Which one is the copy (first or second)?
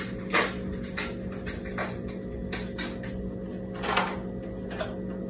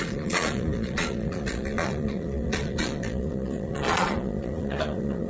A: second